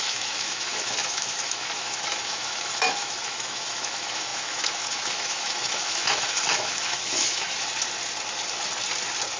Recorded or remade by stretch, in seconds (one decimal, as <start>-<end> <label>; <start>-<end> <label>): 0.0-7.7 remade; 7.7-9.4 recorded